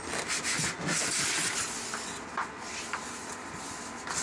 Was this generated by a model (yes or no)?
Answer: no